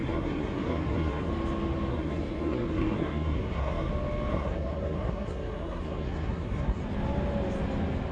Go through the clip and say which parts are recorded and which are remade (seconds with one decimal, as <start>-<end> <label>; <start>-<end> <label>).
0.0-1.3 remade; 1.3-1.9 recorded; 1.9-3.9 remade; 3.9-4.3 recorded; 4.3-6.8 remade; 6.8-8.1 recorded